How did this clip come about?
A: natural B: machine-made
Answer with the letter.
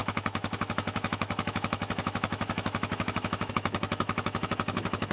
B